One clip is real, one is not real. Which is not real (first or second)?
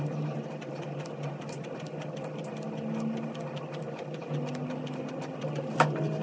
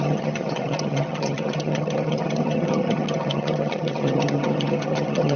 second